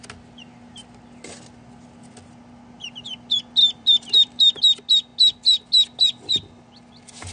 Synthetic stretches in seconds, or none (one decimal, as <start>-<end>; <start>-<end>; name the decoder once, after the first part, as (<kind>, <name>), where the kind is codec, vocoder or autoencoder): 3.6-4.6 (vocoder, BigVGAN v2)